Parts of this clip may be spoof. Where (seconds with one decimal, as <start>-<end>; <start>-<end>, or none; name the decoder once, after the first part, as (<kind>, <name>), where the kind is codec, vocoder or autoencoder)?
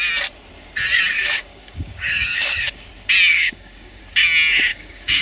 1.2-2.9 (codec, DAC); 3.3-4.0; 4.7-5.2